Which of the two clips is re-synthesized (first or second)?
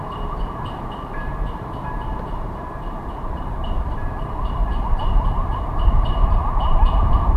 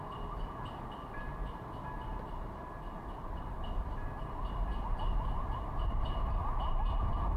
first